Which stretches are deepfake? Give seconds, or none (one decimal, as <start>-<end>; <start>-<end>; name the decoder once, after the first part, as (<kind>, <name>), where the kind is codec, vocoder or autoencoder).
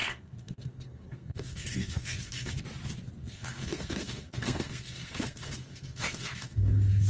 0.0-2.5 (codec, SNAC); 3.2-7.1